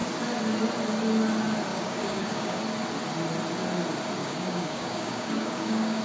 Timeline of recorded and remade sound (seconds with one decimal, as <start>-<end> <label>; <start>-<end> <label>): 0.0-1.7 recorded; 1.7-2.6 remade; 2.6-4.2 recorded; 4.2-6.0 remade